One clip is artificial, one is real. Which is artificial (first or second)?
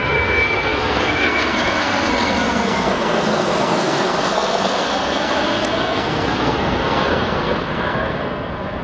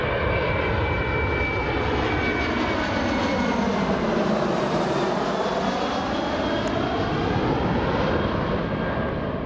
first